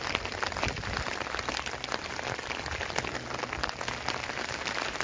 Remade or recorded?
recorded